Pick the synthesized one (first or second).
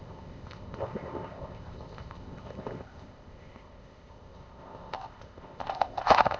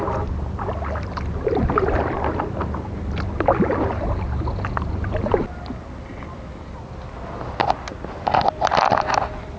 first